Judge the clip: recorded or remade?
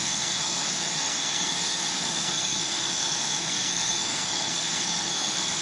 remade